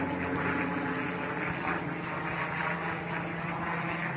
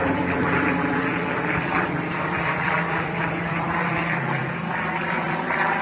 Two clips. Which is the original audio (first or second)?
first